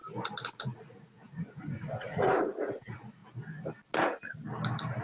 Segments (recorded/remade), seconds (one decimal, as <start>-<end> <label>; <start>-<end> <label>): 0.0-0.6 recorded; 0.6-3.2 remade; 3.2-5.0 recorded